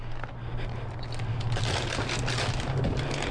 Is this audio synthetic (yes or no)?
no